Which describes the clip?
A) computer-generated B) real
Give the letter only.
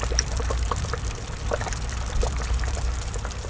A